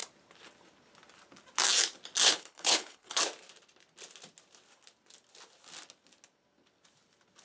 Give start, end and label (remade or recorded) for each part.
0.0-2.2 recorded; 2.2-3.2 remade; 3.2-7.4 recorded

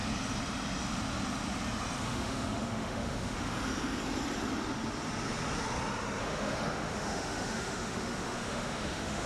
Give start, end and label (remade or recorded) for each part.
0.0-2.0 recorded; 2.0-3.5 remade; 3.5-6.2 recorded; 6.2-9.3 remade

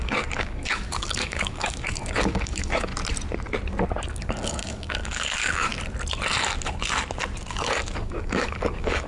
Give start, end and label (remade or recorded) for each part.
0.0-2.9 remade; 2.9-4.0 recorded; 4.0-5.7 remade; 5.7-7.5 recorded; 7.5-9.1 remade